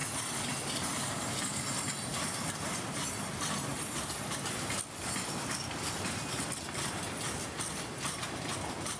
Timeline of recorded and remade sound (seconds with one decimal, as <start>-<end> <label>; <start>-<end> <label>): 0.0-2.1 recorded; 2.1-3.1 remade; 3.1-3.7 recorded; 3.7-8.5 remade; 8.5-9.0 recorded